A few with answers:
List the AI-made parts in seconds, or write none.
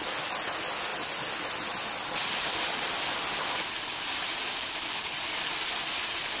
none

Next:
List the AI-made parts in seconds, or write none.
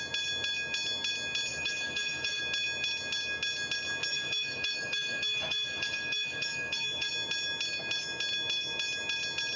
1.5-2.4 (autoencoder, DAC-VAE); 4.1-7.1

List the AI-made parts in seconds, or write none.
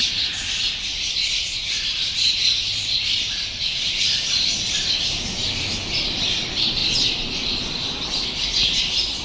none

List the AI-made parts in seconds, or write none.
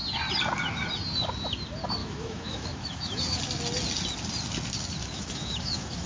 2.0-3.2 (autoencoder, DAC-VAE); 5.0-6.1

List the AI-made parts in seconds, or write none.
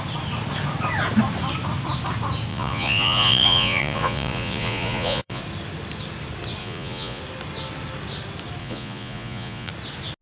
2.5-5.4 (vocoder, Vocos); 6.6-7.2; 8.6-9.7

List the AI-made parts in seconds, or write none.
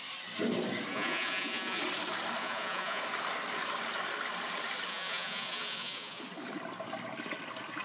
0.9-1.8 (vocoder, Vocos); 2.4-3.0; 4.9-6.2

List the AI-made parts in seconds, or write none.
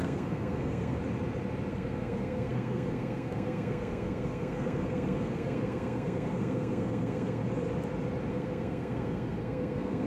0.0-1.0 (codec, SNAC); 1.7-7.4; 8.3-10.1